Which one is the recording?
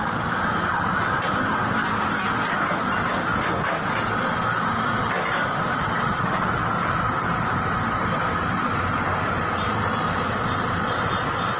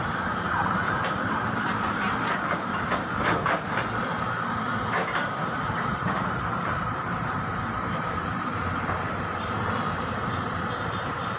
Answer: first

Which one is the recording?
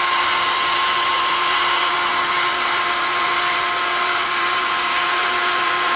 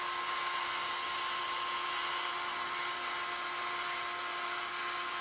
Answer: second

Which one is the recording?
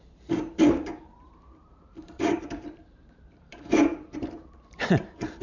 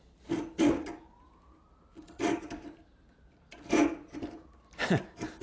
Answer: second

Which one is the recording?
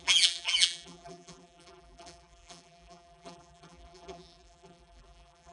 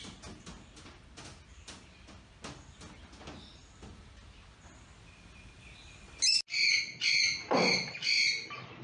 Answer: second